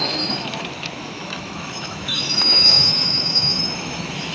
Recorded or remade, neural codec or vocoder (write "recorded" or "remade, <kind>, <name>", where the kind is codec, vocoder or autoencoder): remade, autoencoder, DAC-VAE